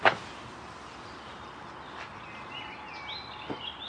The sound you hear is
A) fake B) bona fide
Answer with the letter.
B